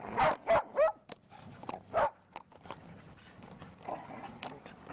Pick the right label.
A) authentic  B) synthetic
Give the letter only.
A